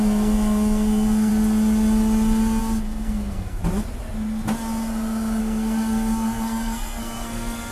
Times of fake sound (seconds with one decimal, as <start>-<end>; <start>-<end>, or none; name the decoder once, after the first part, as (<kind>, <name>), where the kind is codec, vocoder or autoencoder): 0.0-1.3 (codec, SNAC); 2.6-3.6; 5.4-7.7